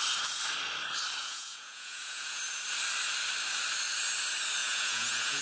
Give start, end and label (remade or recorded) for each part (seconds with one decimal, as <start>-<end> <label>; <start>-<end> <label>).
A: 0.0-1.2 recorded; 1.2-2.4 remade; 2.4-4.6 recorded; 4.6-5.4 remade